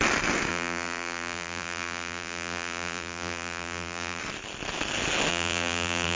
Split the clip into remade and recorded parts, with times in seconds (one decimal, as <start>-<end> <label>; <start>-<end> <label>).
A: 0.0-0.5 recorded; 0.5-4.2 remade; 4.2-5.3 recorded; 5.3-6.2 remade